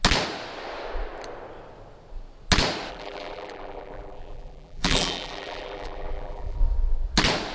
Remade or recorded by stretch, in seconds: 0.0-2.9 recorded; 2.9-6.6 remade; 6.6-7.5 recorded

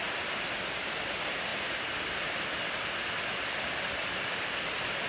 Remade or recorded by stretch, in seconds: 0.0-1.5 recorded; 1.5-4.6 remade; 4.6-5.1 recorded